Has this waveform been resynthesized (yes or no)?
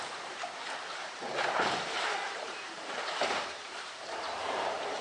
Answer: yes